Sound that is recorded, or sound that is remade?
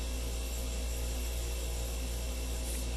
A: recorded